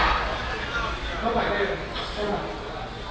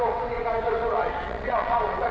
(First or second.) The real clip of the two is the first